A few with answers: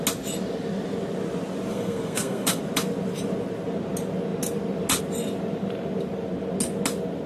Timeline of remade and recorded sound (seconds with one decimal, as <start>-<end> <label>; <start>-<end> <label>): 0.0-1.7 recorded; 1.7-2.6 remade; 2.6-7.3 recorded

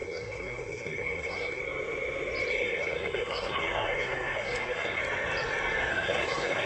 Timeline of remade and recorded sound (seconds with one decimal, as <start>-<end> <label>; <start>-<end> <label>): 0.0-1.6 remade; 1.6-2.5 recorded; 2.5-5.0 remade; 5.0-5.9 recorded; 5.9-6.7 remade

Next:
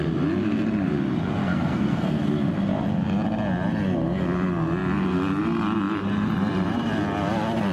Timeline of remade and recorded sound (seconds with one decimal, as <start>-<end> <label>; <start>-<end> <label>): 0.0-1.4 recorded; 1.4-2.2 remade; 2.2-7.7 recorded

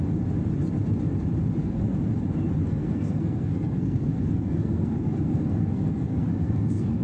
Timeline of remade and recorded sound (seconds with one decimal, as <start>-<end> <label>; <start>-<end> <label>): 0.0-1.6 recorded; 1.6-2.2 remade; 2.2-2.6 recorded; 2.6-7.0 remade

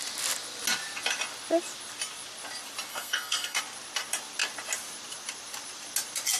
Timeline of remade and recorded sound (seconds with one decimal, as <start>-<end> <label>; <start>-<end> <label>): 0.0-2.9 recorded; 2.9-3.6 remade; 3.6-6.4 recorded

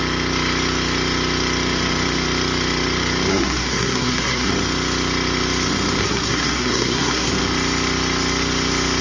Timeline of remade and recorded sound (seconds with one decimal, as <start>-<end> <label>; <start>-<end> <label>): 0.0-3.3 recorded; 3.3-4.5 remade; 4.5-6.0 recorded; 6.0-7.3 remade; 7.3-9.0 recorded